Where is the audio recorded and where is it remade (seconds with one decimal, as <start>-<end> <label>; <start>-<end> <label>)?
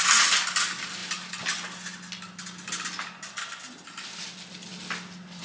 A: 0.0-5.4 recorded